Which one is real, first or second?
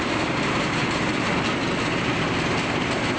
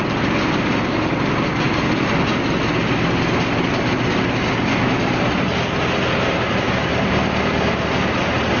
second